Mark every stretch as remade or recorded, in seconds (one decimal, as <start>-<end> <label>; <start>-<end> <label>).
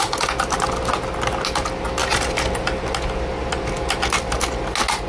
0.0-5.1 recorded